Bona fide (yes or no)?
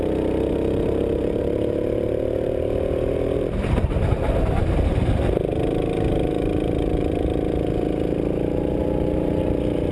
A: no